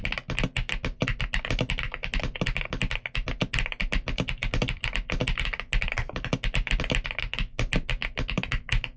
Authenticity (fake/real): real